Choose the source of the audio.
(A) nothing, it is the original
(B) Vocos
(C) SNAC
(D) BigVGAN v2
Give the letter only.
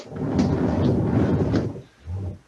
A